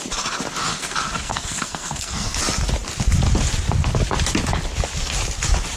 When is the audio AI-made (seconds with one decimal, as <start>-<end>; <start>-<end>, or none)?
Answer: 0.7-2.4